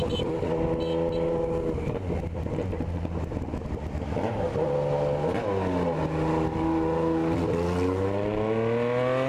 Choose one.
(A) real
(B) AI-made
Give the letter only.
A